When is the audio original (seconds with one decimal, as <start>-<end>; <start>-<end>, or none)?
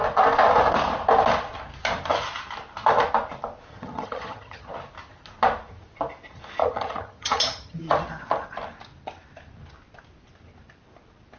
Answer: 0.0-3.7; 4.7-6.6; 7.8-11.4